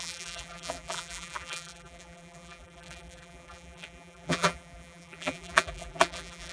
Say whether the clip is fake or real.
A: fake